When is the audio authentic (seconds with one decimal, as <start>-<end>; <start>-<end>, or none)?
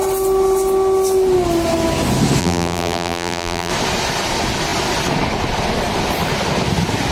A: 0.0-2.4; 3.7-7.1